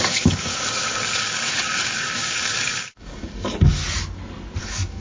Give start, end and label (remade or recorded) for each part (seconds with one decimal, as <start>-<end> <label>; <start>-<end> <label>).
0.0-3.8 remade; 3.8-4.6 recorded; 4.6-5.0 remade